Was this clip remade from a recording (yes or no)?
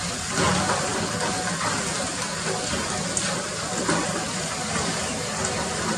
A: no